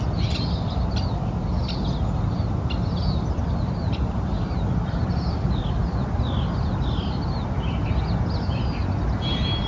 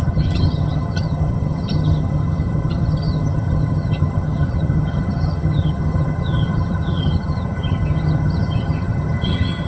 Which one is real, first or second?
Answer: first